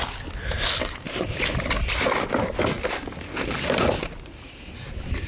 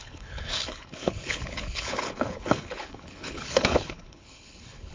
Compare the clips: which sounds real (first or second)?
first